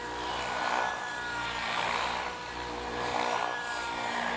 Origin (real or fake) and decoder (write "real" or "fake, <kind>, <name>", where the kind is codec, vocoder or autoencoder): fake, vocoder, BigVGAN v2